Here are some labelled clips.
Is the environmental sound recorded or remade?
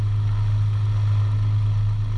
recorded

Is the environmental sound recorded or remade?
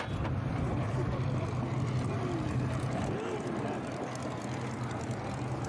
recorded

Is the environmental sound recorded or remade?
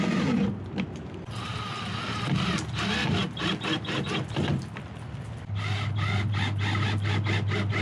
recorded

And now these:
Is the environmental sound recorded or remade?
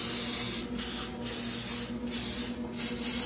recorded